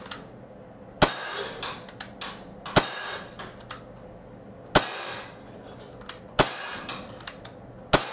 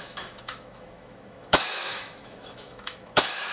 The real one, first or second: first